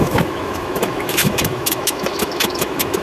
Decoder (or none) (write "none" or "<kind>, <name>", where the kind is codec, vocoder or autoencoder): autoencoder, DAC-VAE